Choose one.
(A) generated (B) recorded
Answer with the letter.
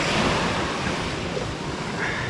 B